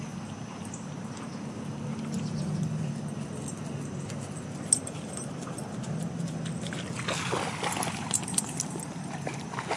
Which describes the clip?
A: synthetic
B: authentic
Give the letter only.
B